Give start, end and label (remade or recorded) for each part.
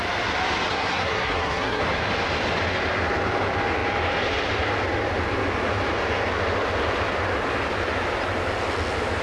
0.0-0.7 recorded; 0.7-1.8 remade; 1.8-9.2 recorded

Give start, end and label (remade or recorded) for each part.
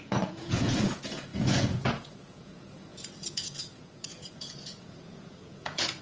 0.0-6.0 remade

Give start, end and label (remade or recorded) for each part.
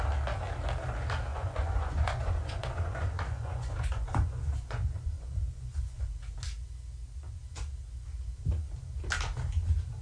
0.0-1.3 recorded; 1.3-6.1 remade; 6.1-10.0 recorded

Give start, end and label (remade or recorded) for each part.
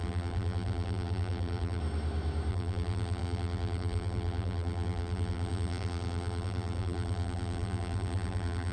0.0-1.8 remade; 1.8-2.5 recorded; 2.5-8.7 remade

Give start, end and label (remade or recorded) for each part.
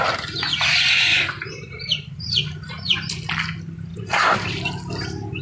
0.0-1.1 recorded; 1.1-2.2 remade; 2.2-3.9 recorded; 3.9-4.7 remade; 4.7-5.4 recorded